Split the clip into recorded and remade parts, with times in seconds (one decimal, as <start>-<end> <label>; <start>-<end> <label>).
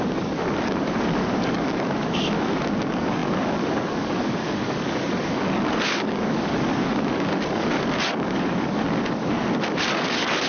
0.0-10.5 remade